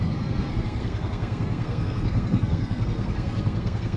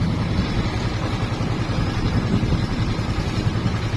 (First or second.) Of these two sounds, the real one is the second